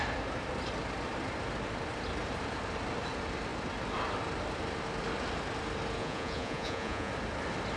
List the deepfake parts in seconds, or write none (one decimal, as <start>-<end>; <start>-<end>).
6.0-7.1